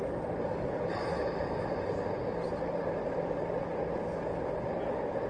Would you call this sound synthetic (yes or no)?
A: no